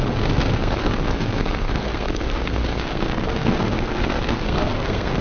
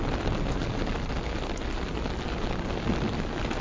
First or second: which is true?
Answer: second